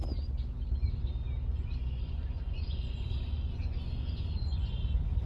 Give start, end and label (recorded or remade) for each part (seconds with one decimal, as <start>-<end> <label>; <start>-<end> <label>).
0.0-1.5 recorded; 1.5-4.7 remade; 4.7-5.3 recorded